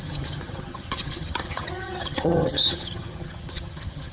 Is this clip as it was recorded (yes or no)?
no